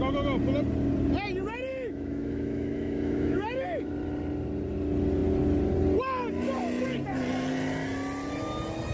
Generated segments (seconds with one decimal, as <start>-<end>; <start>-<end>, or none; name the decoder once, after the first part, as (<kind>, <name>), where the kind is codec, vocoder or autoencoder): 1.7-3.9 (autoencoder, DAC-VAE)